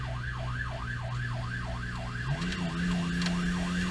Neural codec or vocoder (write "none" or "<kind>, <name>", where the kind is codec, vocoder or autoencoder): none